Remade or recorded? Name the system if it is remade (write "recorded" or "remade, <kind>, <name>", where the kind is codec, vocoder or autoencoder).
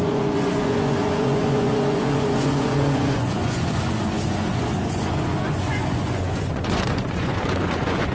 remade, vocoder, Vocos